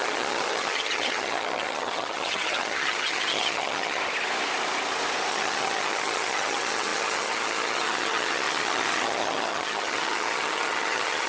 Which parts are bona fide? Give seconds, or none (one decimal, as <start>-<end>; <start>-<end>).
4.0-5.3